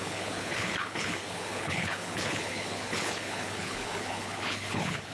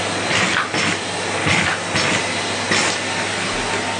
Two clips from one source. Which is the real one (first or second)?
second